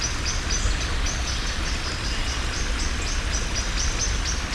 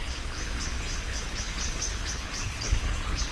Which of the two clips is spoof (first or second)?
second